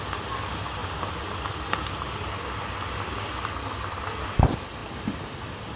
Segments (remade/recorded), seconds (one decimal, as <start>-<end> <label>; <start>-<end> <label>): 0.0-5.8 recorded